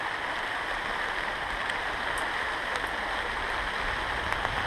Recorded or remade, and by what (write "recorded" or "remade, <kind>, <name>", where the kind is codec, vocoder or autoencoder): recorded